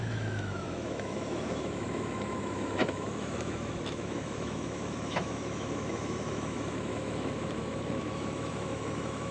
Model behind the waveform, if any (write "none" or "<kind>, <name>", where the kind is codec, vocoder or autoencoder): autoencoder, DAC-VAE